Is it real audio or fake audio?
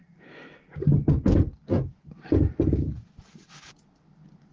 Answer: real